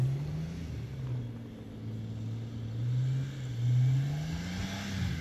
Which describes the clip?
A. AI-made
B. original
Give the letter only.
B